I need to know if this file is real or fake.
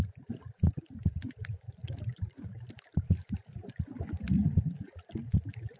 real